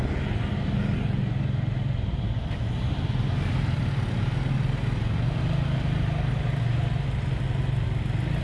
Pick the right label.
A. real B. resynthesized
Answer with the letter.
A